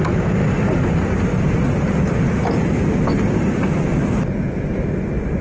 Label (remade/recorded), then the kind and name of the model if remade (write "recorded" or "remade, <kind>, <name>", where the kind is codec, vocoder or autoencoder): recorded